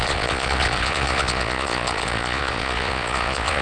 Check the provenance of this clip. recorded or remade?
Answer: remade